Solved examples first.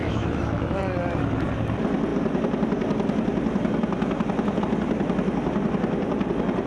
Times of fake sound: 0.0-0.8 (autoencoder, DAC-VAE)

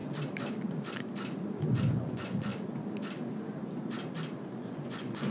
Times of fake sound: 1.5-2.5 (vocoder, Vocos); 4.6-5.3

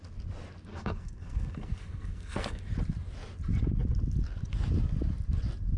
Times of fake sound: 0.7-2.6 (codec, SNAC)

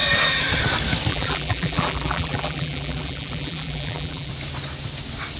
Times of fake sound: 1.1-4.3 (vocoder, BigVGAN v2)

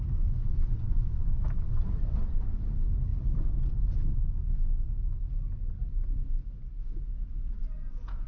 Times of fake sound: 0.4-2.6 (vocoder, WaveNeXt)

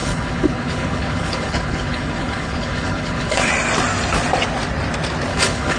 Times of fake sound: 0.0-3.5 (codec, HILCodec); 5.3-5.8

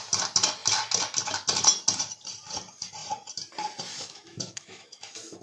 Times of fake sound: 3.9-5.4 (autoencoder, DAC-VAE)